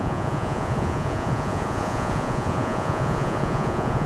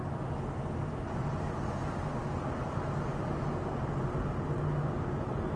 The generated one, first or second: first